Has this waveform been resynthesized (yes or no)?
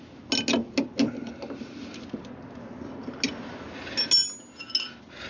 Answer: no